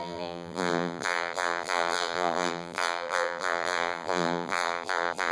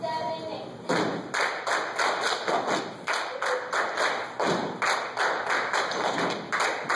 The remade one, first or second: first